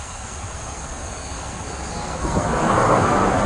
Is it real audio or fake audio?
fake